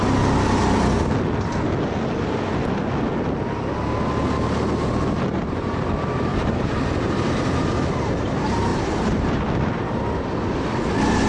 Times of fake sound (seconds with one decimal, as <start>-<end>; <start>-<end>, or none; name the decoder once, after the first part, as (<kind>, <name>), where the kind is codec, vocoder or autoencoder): 6.3-7.7 (vocoder, BigVGAN v2); 8.7-9.4